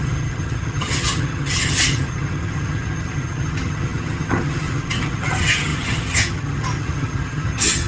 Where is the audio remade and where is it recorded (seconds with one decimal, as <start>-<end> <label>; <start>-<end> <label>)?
0.0-7.9 remade